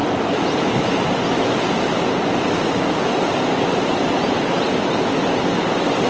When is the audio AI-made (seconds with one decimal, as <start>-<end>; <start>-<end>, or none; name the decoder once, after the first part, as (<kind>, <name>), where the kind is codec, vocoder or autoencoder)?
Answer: none